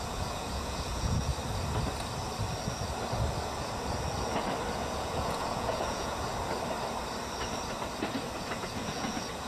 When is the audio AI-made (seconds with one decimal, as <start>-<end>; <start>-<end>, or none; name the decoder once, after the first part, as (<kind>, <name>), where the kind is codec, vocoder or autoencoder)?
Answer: 0.0-1.3 (vocoder, Vocos); 4.7-6.3; 8.4-9.5